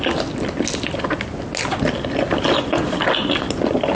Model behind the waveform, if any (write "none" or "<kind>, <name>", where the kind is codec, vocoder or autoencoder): none